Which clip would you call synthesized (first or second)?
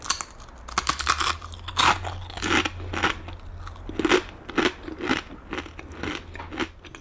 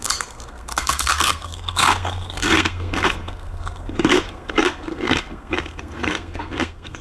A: second